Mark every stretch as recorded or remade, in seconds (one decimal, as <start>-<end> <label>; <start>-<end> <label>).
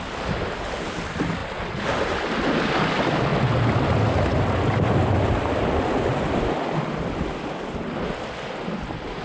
0.0-9.2 recorded